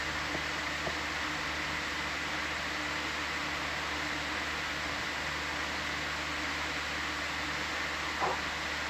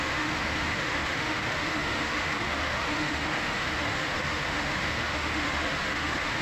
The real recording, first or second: first